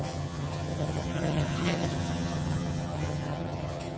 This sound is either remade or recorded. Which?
remade